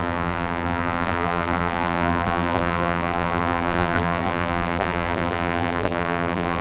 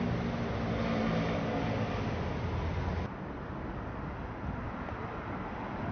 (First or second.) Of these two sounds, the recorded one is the second